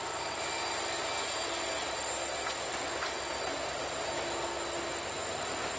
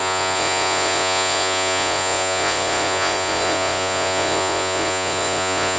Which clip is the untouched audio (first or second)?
first